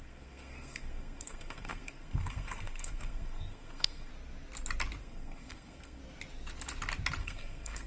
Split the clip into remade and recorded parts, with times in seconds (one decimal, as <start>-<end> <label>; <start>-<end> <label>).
0.0-4.1 remade; 4.1-5.0 recorded; 5.0-6.0 remade; 6.0-7.2 recorded; 7.2-7.9 remade